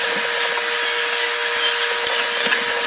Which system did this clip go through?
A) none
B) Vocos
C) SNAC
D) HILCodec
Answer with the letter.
A